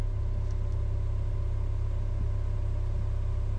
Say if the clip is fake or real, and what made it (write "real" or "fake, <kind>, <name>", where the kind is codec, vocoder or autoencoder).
real